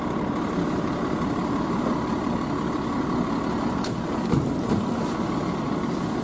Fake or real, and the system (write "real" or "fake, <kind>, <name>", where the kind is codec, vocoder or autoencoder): real